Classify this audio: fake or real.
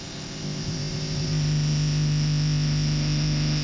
fake